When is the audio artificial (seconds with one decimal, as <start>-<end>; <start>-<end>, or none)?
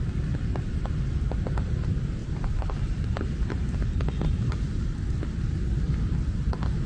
2.2-6.3